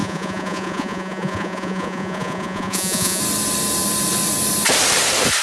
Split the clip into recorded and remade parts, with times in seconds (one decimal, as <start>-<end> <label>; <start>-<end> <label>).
0.0-3.2 remade; 3.2-5.4 recorded